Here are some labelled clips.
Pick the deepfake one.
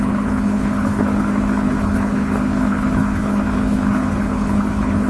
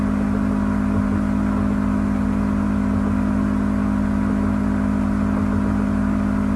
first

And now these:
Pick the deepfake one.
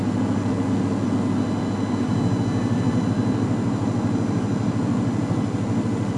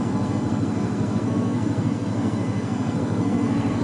second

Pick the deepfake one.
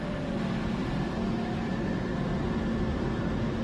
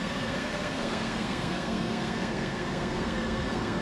second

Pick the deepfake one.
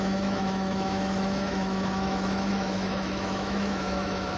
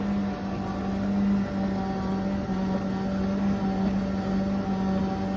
first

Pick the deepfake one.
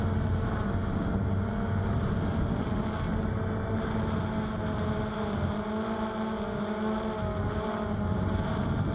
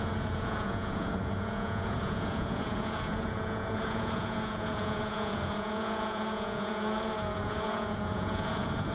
second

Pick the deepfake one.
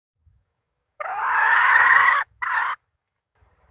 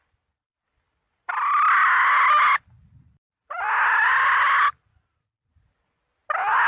first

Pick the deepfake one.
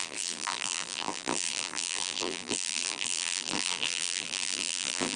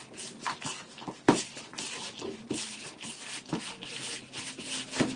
first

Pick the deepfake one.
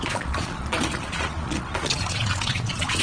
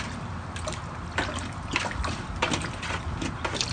first